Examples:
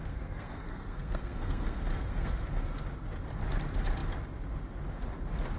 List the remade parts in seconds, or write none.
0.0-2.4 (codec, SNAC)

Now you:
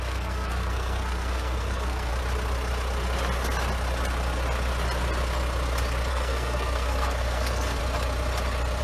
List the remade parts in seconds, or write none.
0.0-2.1 (codec, SNAC); 6.1-7.8

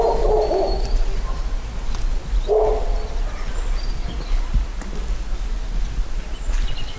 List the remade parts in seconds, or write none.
none

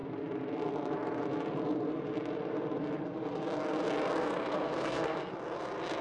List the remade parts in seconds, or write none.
4.2-5.3 (codec, SNAC)

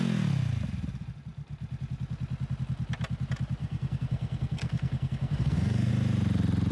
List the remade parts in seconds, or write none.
3.6-5.9 (codec, SNAC)

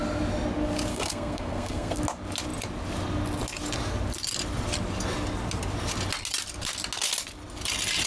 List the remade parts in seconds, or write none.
0.9-2.0 (codec, SNAC)